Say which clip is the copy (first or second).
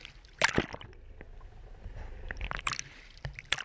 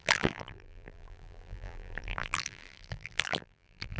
second